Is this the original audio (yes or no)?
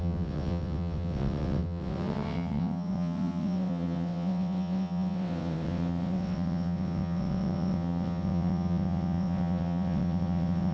no